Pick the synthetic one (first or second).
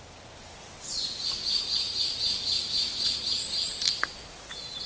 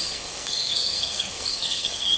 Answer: second